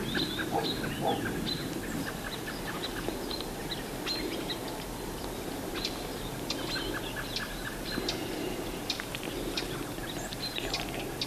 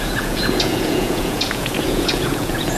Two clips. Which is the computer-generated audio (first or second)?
second